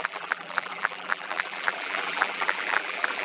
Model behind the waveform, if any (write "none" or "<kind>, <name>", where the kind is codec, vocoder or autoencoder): vocoder, BigVGAN v2